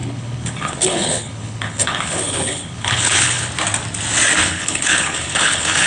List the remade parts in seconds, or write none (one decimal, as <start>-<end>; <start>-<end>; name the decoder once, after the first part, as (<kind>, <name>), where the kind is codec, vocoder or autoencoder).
0.0-3.5 (codec, HILCodec); 4.4-5.9